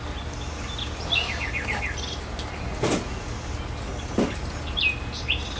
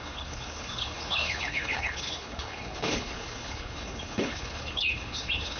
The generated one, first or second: second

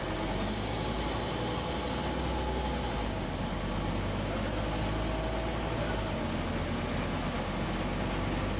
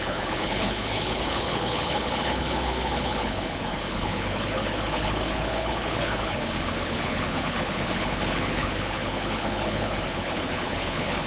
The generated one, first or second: second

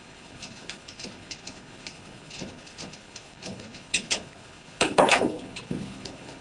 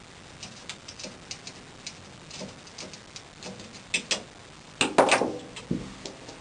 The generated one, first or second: first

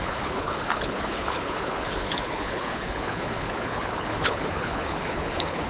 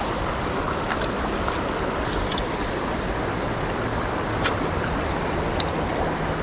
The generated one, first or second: first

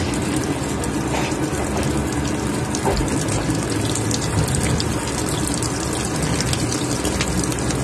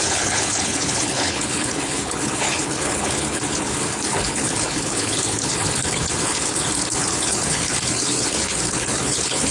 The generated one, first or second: second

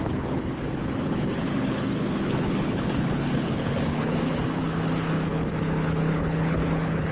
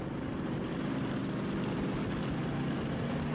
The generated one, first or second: first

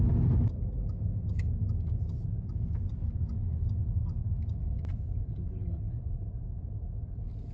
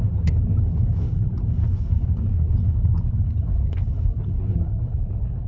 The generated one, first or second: second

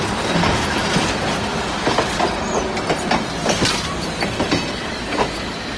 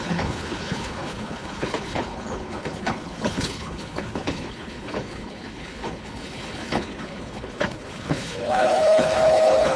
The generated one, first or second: second